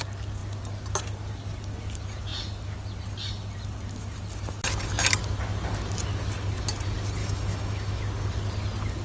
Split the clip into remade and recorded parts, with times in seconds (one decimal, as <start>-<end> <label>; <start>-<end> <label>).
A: 0.0-7.2 recorded; 7.2-8.0 remade; 8.0-9.0 recorded